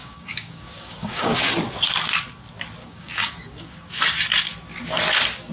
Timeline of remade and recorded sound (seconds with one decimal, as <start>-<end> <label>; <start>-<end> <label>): 0.0-1.5 remade; 1.5-2.8 recorded; 2.8-3.9 remade; 3.9-5.5 recorded